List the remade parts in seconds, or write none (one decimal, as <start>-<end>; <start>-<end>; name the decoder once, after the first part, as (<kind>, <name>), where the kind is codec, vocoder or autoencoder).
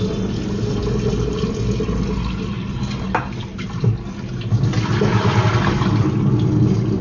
none